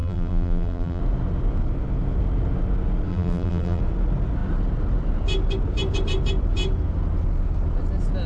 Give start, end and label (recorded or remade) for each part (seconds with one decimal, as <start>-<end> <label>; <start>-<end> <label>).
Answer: 0.0-1.0 remade; 1.0-3.1 recorded; 3.1-3.8 remade; 3.8-8.3 recorded